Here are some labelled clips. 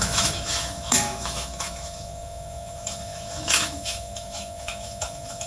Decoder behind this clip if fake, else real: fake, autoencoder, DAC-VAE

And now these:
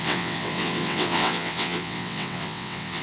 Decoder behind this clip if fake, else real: fake, vocoder, WaveNeXt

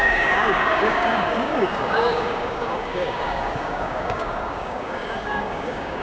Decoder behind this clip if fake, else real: fake, codec, DAC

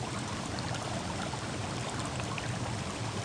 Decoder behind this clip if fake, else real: fake, vocoder, BigVGAN v2